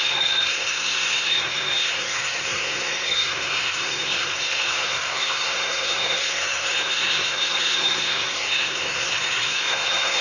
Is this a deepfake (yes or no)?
yes